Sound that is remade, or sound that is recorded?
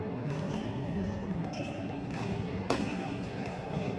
remade